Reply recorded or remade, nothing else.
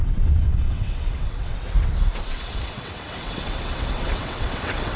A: remade